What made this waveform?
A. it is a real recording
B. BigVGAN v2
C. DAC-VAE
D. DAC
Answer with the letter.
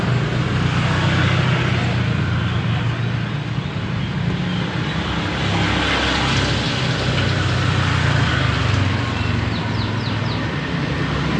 A